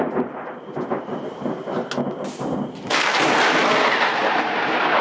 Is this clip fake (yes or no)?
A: no